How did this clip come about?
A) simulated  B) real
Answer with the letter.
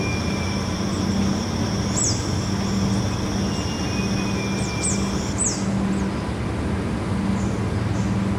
B